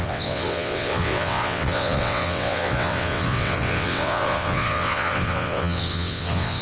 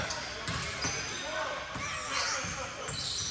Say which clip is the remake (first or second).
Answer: first